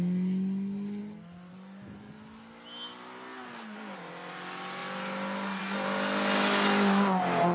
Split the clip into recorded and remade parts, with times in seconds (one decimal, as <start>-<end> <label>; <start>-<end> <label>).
0.0-7.5 recorded